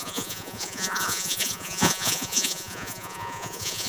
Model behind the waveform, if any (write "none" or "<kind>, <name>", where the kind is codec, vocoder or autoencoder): vocoder, Vocos